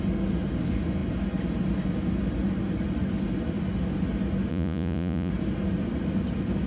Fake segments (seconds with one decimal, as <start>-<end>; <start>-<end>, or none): 4.5-5.3